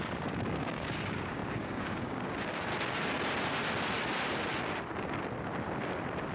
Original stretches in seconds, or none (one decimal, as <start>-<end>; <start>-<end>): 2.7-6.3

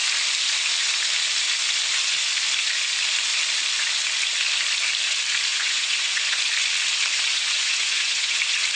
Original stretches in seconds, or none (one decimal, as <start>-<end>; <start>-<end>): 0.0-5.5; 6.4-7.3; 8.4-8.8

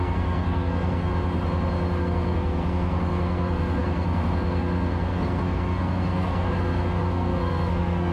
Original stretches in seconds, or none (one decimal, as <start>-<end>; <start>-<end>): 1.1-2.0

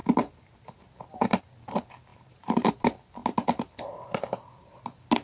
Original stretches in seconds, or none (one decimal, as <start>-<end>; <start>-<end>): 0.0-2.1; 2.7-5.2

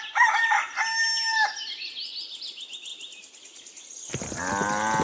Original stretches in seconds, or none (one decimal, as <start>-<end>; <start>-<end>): 0.0-5.0

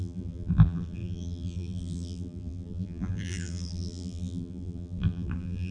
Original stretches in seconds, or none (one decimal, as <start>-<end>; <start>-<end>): none

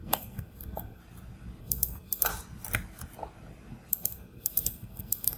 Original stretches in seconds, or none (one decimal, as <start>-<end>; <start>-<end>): 1.0-1.6; 2.3-3.9